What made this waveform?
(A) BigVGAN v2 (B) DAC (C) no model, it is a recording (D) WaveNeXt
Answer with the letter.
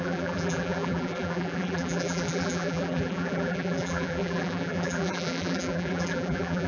A